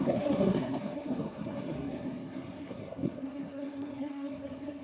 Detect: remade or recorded remade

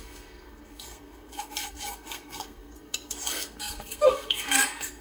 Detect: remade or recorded remade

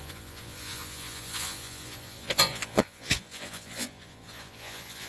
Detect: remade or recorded remade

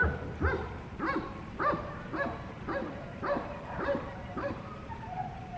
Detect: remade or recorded remade